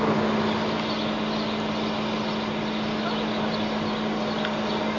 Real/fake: real